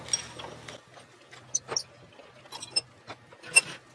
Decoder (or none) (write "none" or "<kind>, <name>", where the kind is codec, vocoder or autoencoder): none